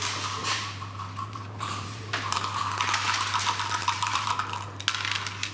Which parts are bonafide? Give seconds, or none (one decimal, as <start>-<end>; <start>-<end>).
0.0-0.4; 2.6-3.8; 4.3-5.5